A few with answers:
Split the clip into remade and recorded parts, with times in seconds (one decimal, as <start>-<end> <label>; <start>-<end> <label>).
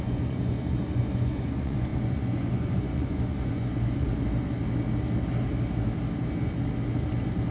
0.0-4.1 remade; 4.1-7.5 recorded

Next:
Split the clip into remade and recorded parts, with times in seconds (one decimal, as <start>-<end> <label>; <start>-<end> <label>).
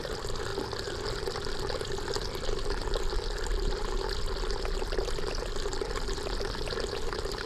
0.0-7.5 recorded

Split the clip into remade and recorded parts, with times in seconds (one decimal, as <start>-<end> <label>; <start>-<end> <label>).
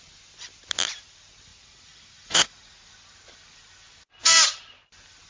0.0-1.5 recorded; 1.5-2.8 remade; 2.8-5.3 recorded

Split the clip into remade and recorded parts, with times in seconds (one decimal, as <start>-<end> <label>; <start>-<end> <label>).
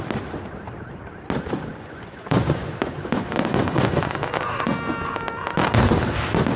0.0-1.7 recorded; 1.7-4.7 remade; 4.7-6.6 recorded